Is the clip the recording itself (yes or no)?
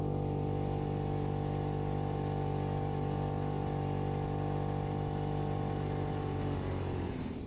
yes